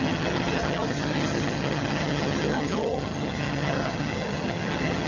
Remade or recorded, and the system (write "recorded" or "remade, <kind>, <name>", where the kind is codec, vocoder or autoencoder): remade, vocoder, HiFi-GAN